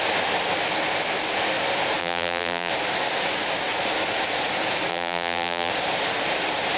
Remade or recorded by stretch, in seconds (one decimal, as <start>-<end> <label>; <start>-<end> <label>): 0.0-2.0 recorded; 2.0-2.7 remade; 2.7-4.9 recorded; 4.9-5.7 remade; 5.7-6.8 recorded